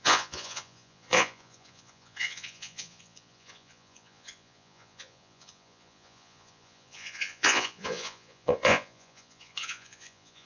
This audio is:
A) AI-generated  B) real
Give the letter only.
A